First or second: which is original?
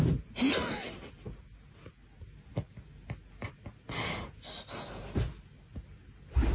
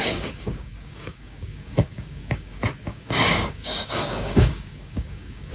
first